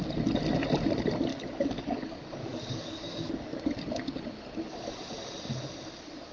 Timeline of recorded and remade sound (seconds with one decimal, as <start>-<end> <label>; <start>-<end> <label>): 0.0-1.3 recorded; 1.3-3.6 remade; 3.6-6.3 recorded